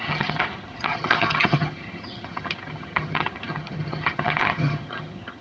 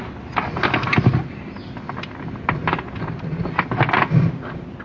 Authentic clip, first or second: second